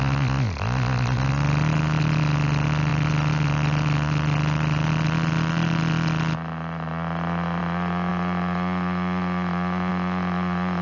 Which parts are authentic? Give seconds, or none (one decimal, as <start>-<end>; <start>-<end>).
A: 0.0-10.8